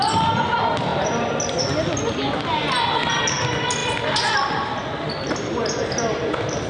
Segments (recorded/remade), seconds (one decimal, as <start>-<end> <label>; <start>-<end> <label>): 0.0-6.7 recorded

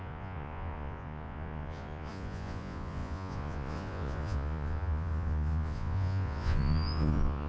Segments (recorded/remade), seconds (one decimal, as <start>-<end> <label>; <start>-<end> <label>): 0.0-7.5 remade

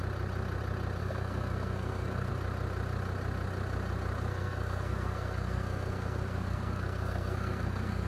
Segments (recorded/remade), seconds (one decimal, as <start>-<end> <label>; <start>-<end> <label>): 0.0-1.0 recorded; 1.0-2.3 remade; 2.3-4.3 recorded; 4.3-8.1 remade

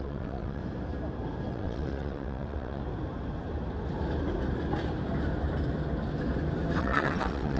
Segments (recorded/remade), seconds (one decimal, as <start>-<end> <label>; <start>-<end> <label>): 0.0-0.6 remade; 0.6-1.5 recorded; 1.5-2.8 remade; 2.8-6.8 recorded; 6.8-7.6 remade